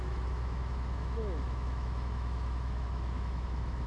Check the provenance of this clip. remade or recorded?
remade